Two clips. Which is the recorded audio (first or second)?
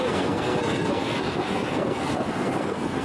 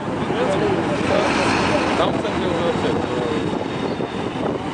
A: second